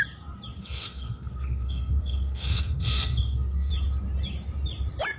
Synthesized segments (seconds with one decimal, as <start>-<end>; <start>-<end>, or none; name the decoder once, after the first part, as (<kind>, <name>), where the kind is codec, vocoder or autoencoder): 0.6-3.7 (codec, SNAC)